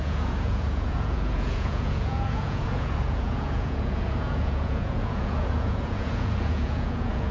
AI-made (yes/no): yes